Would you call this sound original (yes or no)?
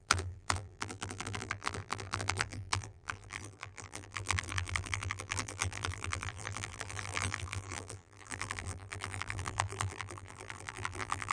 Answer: no